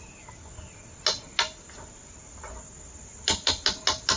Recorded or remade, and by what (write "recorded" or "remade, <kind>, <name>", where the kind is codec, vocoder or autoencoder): recorded